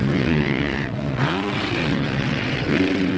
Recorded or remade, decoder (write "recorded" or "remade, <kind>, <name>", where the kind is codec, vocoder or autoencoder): remade, vocoder, WaveNeXt